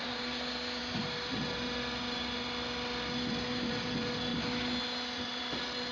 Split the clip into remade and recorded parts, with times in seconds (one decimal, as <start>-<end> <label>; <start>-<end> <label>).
0.0-5.9 recorded